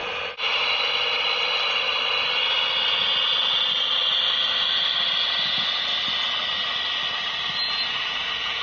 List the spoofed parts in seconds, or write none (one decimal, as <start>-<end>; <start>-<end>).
5.2-5.9; 7.6-8.6